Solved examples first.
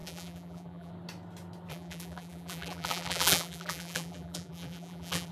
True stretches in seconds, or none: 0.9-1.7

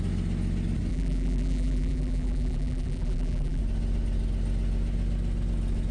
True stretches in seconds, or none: 0.0-0.9; 3.6-5.9